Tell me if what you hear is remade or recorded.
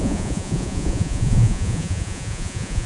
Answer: remade